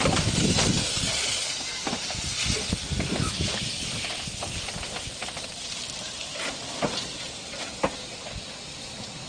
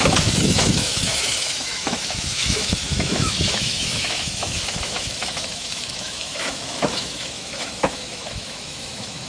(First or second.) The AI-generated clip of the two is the second